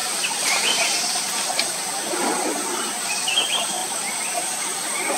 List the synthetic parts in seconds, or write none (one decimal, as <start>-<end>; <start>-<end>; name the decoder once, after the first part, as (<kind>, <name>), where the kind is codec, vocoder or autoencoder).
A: 3.8-4.6 (vocoder, BigVGAN v2)